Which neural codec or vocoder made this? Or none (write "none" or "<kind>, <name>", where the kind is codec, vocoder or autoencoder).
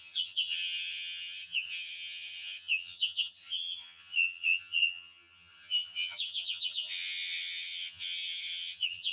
vocoder, HiFi-GAN